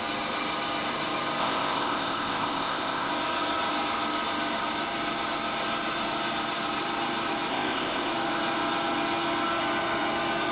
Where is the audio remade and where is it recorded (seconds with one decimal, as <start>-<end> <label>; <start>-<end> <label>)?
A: 0.0-1.4 recorded; 1.4-3.1 remade; 3.1-7.5 recorded; 7.5-8.1 remade; 8.1-10.5 recorded